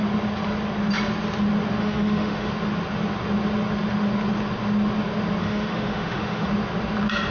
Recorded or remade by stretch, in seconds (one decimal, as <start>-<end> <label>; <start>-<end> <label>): 0.0-1.8 recorded; 1.8-2.5 remade; 2.5-5.4 recorded; 5.4-6.5 remade; 6.5-7.3 recorded